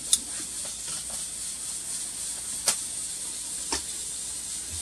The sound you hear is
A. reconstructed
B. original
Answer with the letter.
B